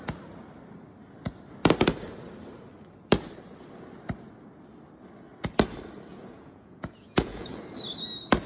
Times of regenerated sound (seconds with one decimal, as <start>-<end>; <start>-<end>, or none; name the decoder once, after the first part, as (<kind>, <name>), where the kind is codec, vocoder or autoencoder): 6.1-7.6 (vocoder, Vocos)